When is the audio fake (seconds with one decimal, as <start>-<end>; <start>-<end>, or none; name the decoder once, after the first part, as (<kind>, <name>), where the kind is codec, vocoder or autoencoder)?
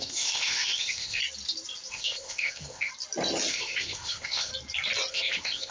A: 0.0-1.2 (codec, ZipCodec); 1.9-2.9; 3.5-4.5; 5.1-5.7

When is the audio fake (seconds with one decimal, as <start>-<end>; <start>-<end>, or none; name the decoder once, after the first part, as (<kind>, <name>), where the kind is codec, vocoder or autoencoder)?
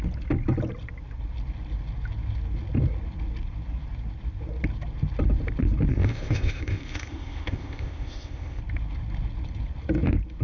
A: 5.9-8.6 (codec, ZipCodec)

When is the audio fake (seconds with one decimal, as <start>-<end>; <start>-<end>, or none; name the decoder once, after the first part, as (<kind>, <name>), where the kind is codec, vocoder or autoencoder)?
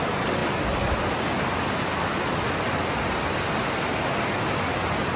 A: none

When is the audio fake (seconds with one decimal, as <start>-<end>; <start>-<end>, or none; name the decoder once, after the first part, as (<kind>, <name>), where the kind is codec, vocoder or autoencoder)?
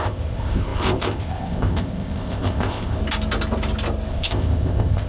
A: 0.0-3.0 (codec, ZipCodec); 4.1-5.1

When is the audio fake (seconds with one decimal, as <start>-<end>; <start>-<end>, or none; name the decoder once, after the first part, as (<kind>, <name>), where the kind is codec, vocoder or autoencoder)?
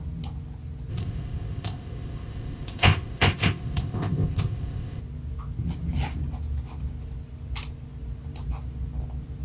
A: 0.9-5.0 (codec, ZipCodec)